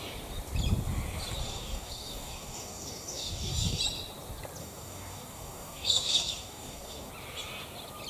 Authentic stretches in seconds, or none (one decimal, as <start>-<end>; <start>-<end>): 0.0-1.4; 3.8-4.6; 7.1-8.1